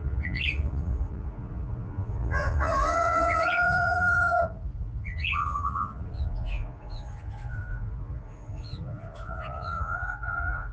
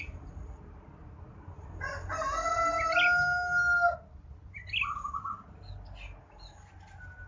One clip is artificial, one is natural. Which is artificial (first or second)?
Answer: first